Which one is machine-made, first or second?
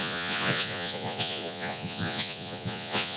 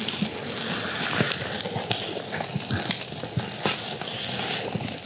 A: first